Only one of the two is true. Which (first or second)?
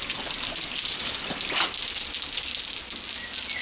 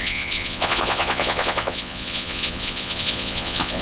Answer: first